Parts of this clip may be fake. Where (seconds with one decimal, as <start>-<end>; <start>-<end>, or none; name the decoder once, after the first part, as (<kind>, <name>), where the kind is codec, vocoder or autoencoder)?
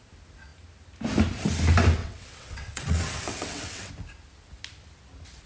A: 2.0-3.9 (vocoder, WaveNeXt)